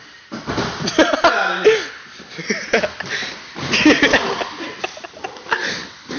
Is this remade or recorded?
recorded